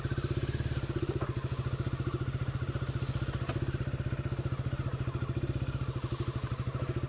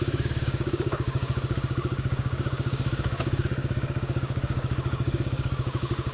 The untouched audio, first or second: first